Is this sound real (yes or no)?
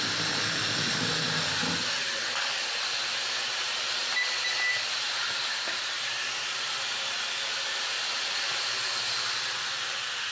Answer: yes